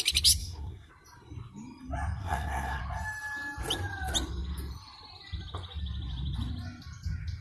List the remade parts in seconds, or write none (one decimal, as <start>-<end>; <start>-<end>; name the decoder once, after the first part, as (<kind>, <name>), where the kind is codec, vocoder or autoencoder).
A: 0.4-0.9 (codec, SNAC); 2.2-2.8